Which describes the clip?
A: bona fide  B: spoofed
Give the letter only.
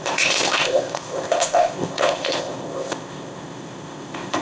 B